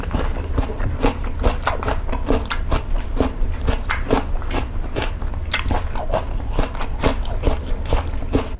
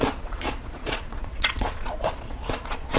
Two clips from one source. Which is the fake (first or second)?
second